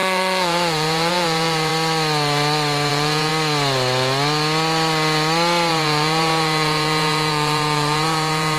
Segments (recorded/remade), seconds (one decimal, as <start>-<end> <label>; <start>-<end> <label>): 0.0-1.7 remade; 1.7-2.9 recorded; 2.9-3.3 remade; 3.3-5.7 recorded; 5.7-8.6 remade